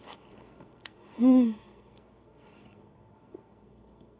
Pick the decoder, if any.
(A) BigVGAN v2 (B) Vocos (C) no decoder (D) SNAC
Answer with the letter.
D